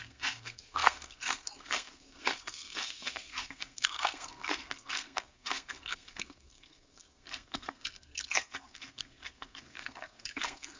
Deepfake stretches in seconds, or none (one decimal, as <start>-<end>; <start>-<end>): 0.0-10.8